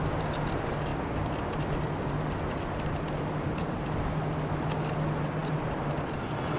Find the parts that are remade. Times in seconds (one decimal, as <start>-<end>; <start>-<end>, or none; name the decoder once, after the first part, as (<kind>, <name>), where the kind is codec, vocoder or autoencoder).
none